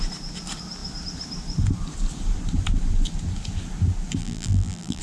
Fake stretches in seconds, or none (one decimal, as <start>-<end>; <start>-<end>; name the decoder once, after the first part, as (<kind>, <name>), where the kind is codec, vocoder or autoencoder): 4.2-5.0 (vocoder, BigVGAN v2)